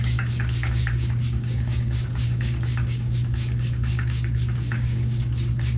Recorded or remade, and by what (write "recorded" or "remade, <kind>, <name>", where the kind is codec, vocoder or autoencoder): remade, codec, DAC